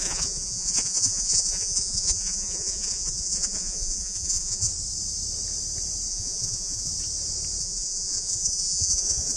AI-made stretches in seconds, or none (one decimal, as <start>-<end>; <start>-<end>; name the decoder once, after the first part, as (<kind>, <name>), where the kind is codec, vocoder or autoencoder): 0.0-4.7 (vocoder, Vocos); 6.1-6.9; 7.6-9.4